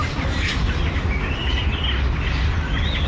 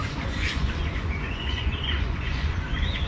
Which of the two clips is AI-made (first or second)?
second